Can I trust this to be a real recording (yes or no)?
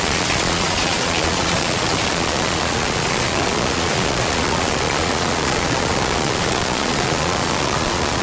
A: no